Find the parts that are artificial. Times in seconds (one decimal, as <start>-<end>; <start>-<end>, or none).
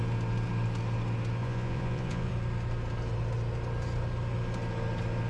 1.4-2.3